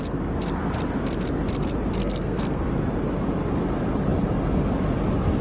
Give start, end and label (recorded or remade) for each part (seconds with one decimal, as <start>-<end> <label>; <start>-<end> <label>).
0.0-2.0 recorded; 2.0-2.7 remade; 2.7-5.4 recorded